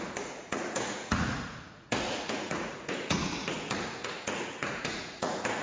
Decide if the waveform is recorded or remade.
remade